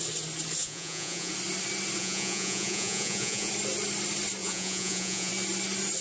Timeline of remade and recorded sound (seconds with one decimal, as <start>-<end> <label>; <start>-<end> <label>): 0.0-0.6 recorded; 0.6-1.3 remade; 1.3-2.0 recorded; 2.0-3.5 remade; 3.5-4.4 recorded; 4.4-5.3 remade; 5.3-6.0 recorded